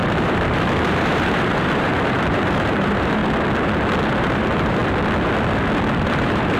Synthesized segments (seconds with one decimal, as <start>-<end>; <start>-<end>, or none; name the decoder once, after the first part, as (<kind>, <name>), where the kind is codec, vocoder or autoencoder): 0.0-3.2 (vocoder, BigVGAN v2); 4.2-4.8; 6.0-6.6